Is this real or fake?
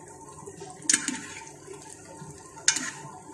real